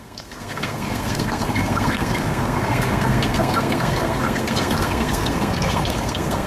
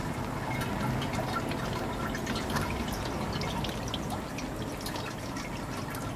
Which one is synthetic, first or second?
first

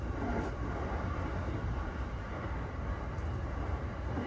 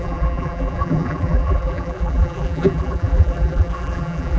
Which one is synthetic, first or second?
second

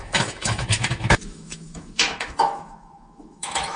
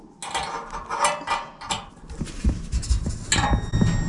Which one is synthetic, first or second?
first